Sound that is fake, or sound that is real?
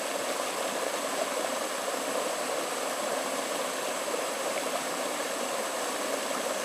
real